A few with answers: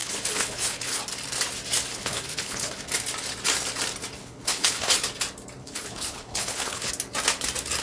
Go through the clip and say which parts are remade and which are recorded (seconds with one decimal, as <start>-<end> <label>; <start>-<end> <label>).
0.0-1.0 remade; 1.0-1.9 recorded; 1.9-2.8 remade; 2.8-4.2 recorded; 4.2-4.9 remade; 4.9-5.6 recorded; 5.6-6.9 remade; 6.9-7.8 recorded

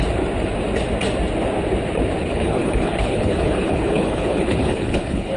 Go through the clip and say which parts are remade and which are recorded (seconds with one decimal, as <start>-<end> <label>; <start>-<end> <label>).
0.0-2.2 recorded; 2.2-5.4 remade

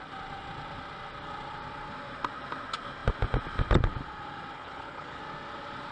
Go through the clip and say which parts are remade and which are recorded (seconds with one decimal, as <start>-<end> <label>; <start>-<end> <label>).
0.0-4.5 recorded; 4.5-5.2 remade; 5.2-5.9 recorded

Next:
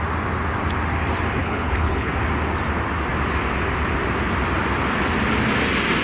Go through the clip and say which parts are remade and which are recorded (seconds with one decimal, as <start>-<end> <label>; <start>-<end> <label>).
0.0-1.4 recorded; 1.4-2.1 remade; 2.1-6.0 recorded

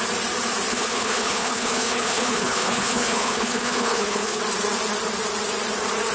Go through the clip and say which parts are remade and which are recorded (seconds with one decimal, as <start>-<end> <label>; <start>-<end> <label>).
0.0-0.7 recorded; 0.7-4.4 remade; 4.4-6.1 recorded

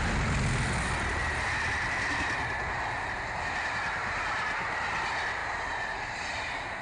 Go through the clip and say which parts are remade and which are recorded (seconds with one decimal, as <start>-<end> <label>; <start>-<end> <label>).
0.0-6.8 recorded

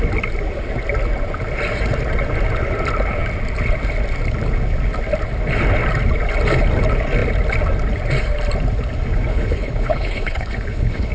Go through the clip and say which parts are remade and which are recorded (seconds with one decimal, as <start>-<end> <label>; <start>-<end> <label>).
0.0-9.3 recorded; 9.3-11.1 remade